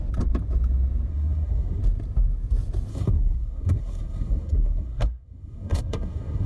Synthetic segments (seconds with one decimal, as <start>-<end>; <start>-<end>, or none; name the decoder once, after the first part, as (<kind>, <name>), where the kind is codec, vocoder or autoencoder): 1.1-1.8 (codec, SNAC); 2.9-6.5